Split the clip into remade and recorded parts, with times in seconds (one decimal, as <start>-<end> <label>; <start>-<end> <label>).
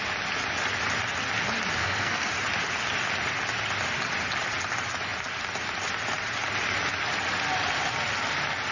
0.0-1.8 recorded; 1.8-2.3 remade; 2.3-8.7 recorded